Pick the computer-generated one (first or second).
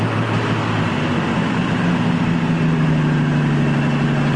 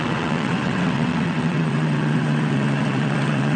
second